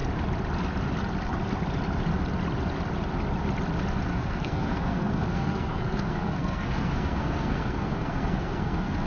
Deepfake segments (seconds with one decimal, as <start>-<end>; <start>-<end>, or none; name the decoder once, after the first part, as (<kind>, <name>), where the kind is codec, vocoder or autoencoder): 4.1-9.1 (codec, SNAC)